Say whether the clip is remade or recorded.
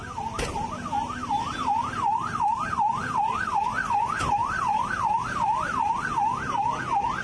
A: recorded